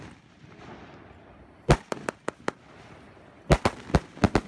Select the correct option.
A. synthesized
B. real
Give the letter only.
B